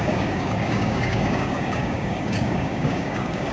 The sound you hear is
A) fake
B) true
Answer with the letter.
A